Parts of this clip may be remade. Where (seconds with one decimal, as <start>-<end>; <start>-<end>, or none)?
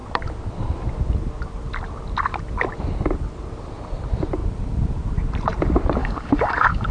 6.0-6.9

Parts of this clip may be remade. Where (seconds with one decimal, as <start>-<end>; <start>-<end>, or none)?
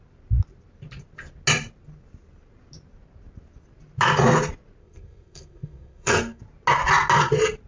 4.8-6.4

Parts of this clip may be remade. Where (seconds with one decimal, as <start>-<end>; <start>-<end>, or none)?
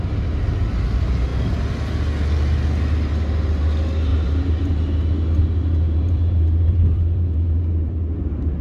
4.1-4.7; 5.7-8.0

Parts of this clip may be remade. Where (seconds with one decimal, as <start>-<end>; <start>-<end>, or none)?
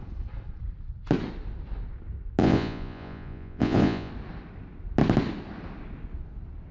2.4-4.1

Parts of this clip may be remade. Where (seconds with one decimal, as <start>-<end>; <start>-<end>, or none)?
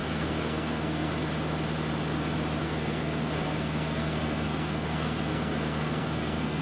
0.0-1.1; 2.6-6.6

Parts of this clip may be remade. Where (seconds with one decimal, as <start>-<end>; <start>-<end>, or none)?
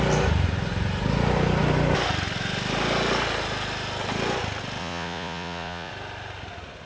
4.8-5.9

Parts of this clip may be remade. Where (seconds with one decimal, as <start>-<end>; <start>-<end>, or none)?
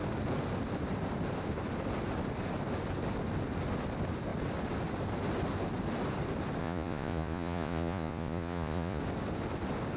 6.6-9.0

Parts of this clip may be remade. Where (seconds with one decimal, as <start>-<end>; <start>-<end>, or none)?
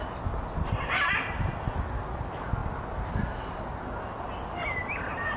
none